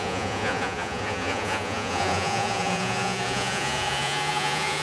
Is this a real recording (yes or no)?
no